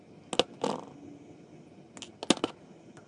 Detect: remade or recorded recorded